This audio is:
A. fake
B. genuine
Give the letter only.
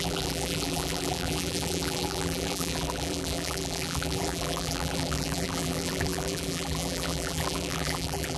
A